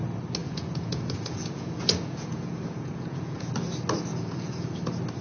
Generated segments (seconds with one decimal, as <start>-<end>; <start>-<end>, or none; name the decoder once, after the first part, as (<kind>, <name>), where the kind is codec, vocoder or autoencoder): 0.4-3.5 (vocoder, Vocos); 4.1-4.8